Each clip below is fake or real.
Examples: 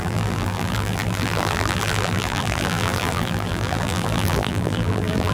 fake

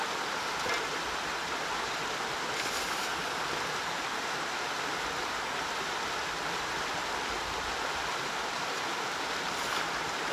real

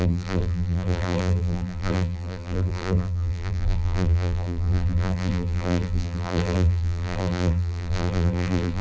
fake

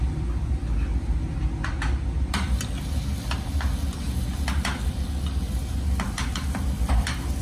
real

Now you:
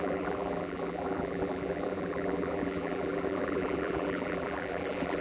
fake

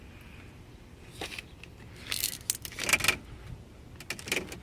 real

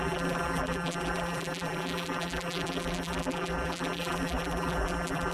fake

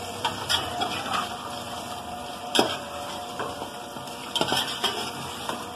fake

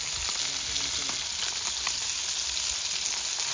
real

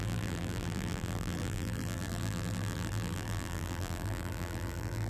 fake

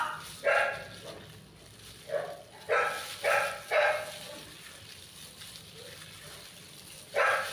real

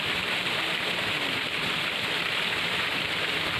real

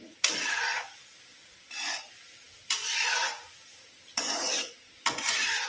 real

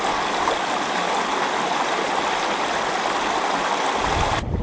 real